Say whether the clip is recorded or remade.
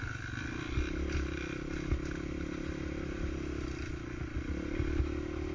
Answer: recorded